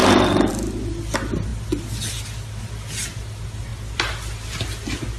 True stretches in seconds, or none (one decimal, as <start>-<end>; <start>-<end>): 0.0-5.2